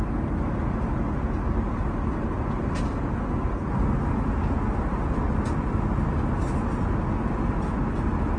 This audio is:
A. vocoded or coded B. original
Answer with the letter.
B